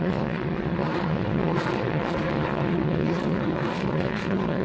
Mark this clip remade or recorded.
remade